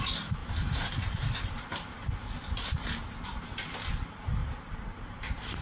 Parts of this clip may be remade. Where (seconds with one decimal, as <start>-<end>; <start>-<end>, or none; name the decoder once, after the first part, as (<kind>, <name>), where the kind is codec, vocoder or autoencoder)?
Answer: 0.4-2.8 (vocoder, BigVGAN v2); 4.4-5.6